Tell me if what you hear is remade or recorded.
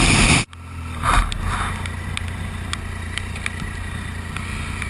recorded